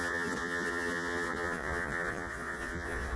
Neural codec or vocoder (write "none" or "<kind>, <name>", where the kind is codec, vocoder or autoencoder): vocoder, Vocos